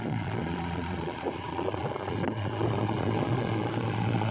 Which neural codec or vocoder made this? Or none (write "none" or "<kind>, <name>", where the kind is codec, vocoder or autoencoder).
vocoder, Vocos